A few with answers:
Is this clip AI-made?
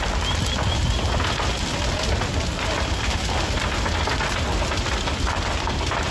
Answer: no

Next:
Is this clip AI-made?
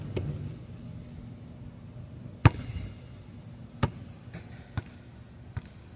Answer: no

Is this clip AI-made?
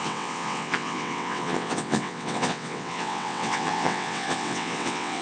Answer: yes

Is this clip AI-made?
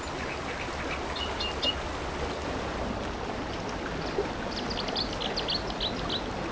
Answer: no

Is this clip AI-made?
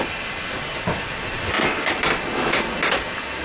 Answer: no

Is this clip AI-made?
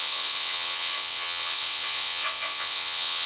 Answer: yes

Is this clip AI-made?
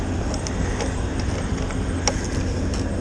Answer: no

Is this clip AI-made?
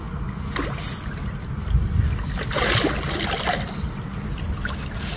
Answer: no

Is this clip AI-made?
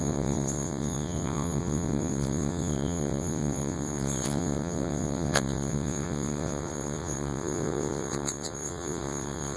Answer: yes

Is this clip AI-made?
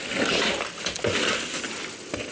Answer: no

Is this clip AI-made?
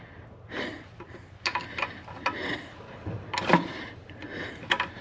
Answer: no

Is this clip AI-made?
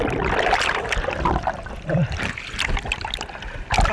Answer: no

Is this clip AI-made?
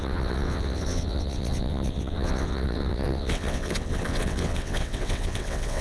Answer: yes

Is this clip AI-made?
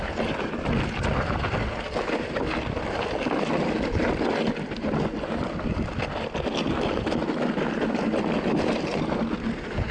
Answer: no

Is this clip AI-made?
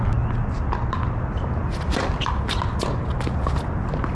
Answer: no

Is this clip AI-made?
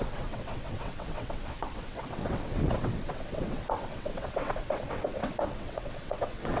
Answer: yes